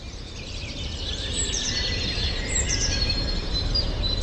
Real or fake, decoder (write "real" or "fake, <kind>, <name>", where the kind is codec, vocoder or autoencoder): fake, vocoder, BigVGAN v2